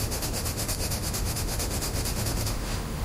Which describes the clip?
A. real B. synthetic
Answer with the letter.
B